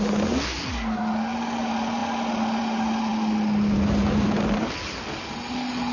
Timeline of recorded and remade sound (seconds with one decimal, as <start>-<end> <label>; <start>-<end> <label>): 0.0-5.9 recorded

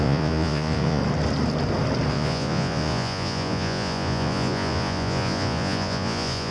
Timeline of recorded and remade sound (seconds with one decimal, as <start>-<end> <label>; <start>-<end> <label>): 0.0-1.0 remade; 1.0-2.1 recorded; 2.1-6.5 remade

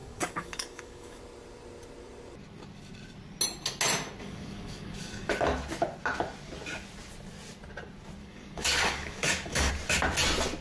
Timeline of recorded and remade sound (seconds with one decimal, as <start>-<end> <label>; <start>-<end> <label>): 0.0-1.2 remade; 1.2-4.2 recorded; 4.2-5.3 remade; 5.3-8.2 recorded; 8.2-9.7 remade; 9.7-10.6 recorded

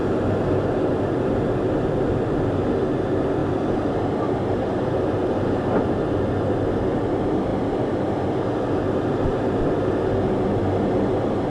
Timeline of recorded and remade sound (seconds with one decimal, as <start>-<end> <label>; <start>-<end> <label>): 0.0-1.3 remade; 1.3-3.4 recorded; 3.4-5.8 remade; 5.8-7.5 recorded; 7.5-9.7 remade; 9.7-11.5 recorded

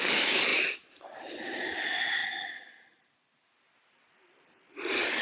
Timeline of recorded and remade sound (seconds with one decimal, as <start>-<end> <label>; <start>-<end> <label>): 0.0-5.2 recorded

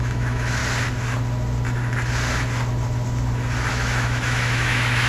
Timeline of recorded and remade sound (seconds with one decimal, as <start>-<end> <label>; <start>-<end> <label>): 0.0-0.6 remade; 0.6-3.7 recorded; 3.7-5.1 remade

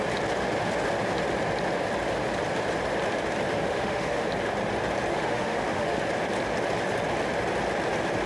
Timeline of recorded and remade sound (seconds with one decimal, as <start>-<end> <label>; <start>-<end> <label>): 0.0-3.6 recorded; 3.6-4.3 remade; 4.3-5.1 recorded; 5.1-6.0 remade; 6.0-8.3 recorded

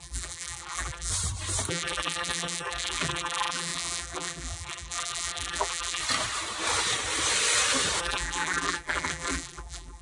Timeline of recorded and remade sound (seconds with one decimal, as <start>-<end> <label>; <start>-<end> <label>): 0.0-1.1 remade; 1.1-1.7 recorded; 1.7-6.0 remade; 6.0-8.0 recorded; 8.0-10.0 remade